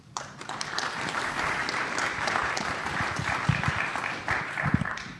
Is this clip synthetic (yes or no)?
yes